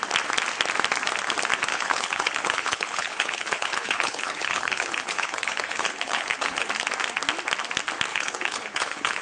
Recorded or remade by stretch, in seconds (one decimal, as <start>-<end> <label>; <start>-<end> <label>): 0.0-1.7 recorded; 1.7-6.7 remade; 6.7-8.1 recorded; 8.1-9.2 remade